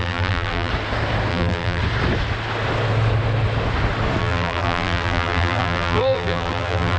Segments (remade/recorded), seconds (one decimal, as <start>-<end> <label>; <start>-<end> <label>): 0.0-0.7 remade; 0.7-1.3 recorded; 1.3-1.8 remade; 1.8-4.2 recorded; 4.2-7.0 remade